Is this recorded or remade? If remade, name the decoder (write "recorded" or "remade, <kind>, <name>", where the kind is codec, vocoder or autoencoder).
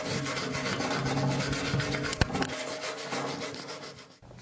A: recorded